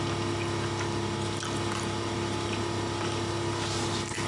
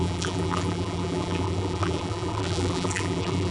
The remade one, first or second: second